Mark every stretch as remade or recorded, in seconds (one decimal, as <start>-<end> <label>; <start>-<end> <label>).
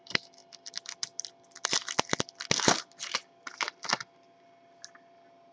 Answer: 0.0-5.5 recorded